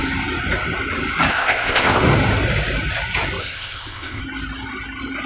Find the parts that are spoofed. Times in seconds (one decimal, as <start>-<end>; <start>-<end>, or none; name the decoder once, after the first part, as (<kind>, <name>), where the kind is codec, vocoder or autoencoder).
1.3-2.0 (codec, ZipCodec); 3.4-4.2